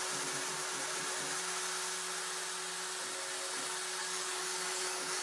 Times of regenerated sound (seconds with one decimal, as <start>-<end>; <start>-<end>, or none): 4.0-5.2